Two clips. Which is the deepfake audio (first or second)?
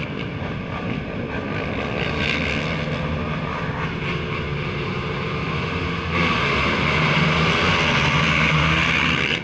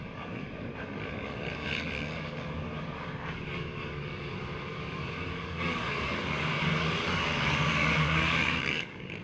second